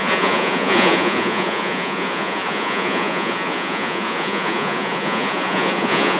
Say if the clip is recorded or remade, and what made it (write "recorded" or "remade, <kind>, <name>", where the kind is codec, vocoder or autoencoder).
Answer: remade, vocoder, Vocos